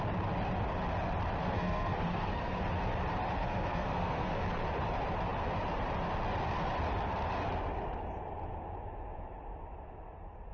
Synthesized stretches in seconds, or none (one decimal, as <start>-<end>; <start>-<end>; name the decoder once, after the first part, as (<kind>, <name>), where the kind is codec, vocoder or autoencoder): 1.4-2.6 (codec, SNAC); 3.4-4.3